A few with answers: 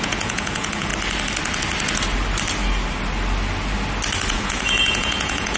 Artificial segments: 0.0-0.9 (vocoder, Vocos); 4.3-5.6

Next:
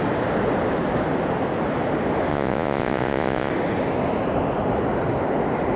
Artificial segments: 2.3-3.5 (vocoder, Vocos)